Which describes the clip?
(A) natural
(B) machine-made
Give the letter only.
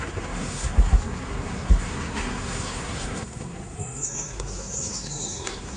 B